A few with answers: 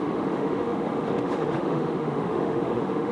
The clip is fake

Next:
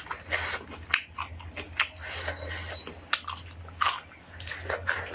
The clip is real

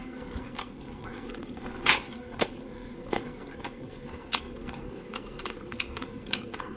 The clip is fake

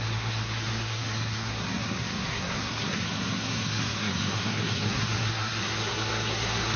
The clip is fake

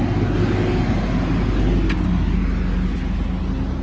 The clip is real